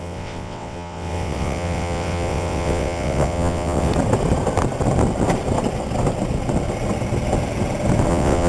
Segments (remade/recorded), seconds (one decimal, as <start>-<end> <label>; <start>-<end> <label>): 0.0-3.9 remade; 3.9-8.1 recorded; 8.1-8.5 remade